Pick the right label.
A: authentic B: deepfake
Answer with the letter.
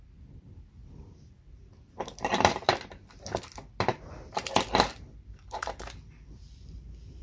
B